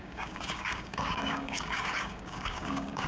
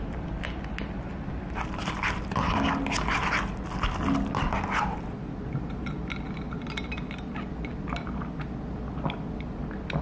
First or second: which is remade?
first